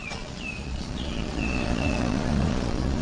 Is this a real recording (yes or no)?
no